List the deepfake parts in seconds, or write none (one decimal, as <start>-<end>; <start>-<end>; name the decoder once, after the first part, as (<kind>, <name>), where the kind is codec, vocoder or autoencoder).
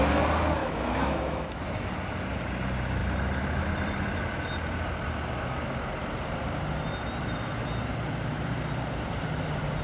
0.6-1.6 (autoencoder, DAC-VAE)